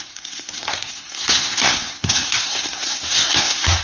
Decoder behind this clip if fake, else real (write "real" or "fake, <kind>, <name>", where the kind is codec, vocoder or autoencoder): fake, codec, SNAC